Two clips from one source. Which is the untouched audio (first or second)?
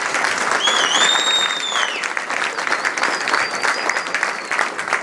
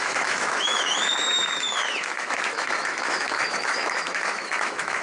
first